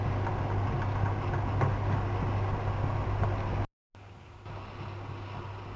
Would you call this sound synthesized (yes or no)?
no